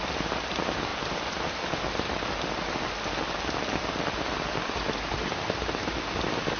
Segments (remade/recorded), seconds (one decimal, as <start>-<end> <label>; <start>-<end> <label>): 0.0-6.6 recorded